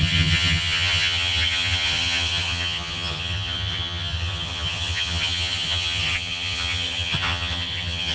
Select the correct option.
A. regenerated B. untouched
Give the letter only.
A